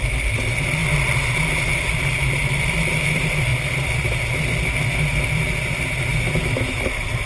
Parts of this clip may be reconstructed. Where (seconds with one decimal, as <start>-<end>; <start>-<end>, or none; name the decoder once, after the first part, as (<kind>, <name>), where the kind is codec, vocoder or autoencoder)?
6.1-6.8 (autoencoder, DAC-VAE)